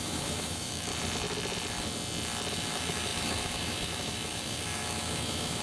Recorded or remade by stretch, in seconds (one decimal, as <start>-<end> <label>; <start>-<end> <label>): 0.0-0.9 remade; 0.9-2.5 recorded; 2.5-5.6 remade